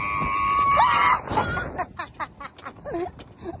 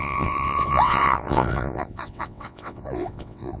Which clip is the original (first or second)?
first